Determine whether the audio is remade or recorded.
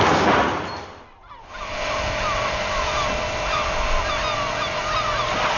recorded